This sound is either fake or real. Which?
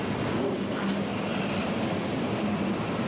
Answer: real